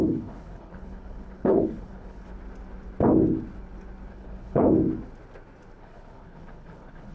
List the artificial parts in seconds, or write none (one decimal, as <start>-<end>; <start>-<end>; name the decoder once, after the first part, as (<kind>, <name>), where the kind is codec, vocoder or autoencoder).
0.0-2.3 (codec, HILCodec); 4.1-4.7; 5.8-7.1